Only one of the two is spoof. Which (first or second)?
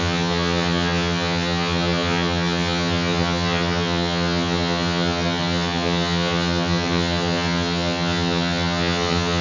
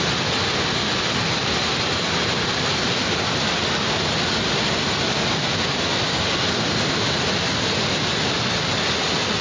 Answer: first